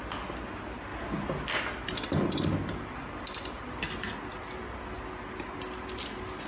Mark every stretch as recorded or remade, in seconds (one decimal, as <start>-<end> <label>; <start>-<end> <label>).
0.0-6.5 recorded